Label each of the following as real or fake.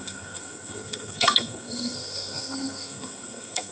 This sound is fake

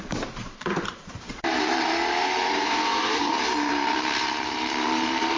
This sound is fake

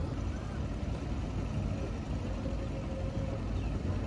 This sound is real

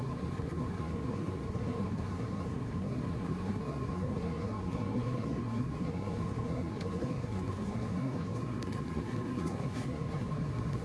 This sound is fake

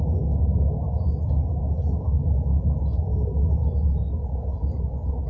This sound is real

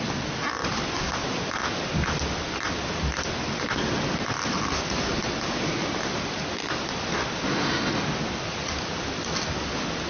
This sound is real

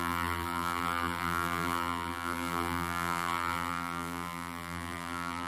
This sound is fake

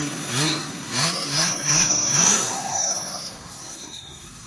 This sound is fake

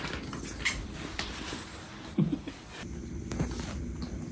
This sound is real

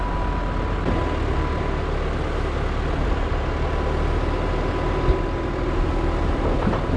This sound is real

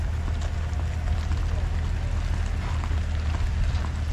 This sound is real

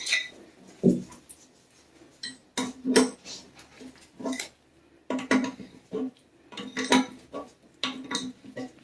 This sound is real